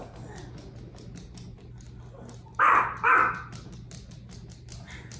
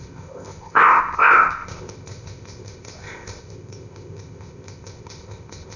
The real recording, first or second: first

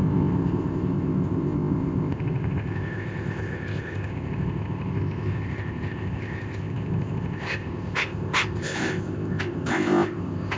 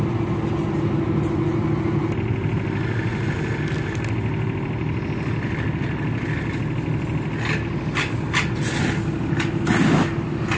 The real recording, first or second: second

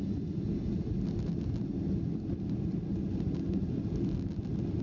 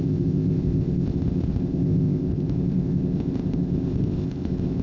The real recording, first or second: first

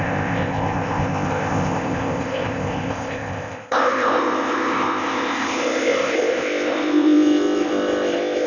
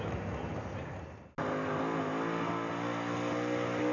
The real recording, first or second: second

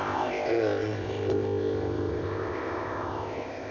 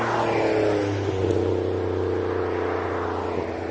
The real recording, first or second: second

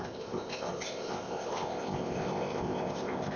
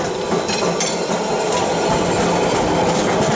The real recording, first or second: second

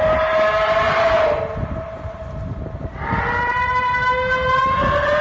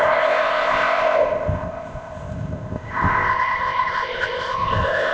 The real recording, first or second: first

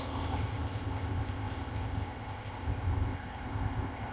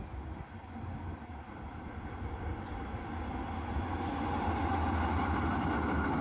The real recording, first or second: second